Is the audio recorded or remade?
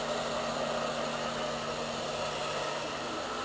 recorded